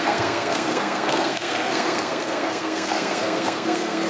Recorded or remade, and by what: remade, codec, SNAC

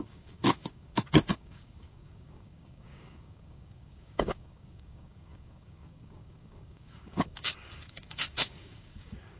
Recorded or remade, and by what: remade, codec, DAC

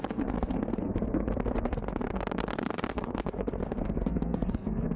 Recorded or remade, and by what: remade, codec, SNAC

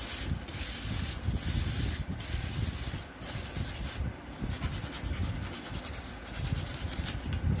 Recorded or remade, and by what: recorded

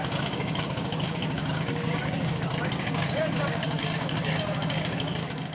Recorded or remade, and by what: remade, codec, DAC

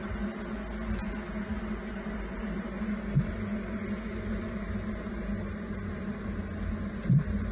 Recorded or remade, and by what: recorded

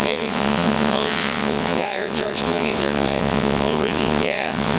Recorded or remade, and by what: remade, vocoder, WaveNeXt